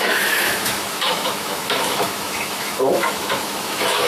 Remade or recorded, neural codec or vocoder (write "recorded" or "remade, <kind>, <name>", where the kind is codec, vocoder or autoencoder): remade, autoencoder, DAC-VAE